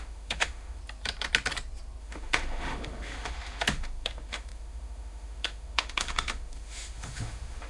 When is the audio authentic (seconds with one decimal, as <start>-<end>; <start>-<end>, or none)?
0.8-2.0